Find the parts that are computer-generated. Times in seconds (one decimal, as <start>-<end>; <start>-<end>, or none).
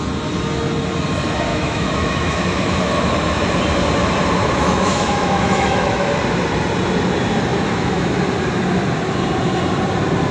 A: 1.5-3.5; 4.4-6.2; 7.5-8.2